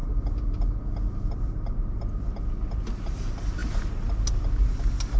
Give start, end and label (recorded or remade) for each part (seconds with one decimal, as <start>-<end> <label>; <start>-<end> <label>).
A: 0.0-5.2 recorded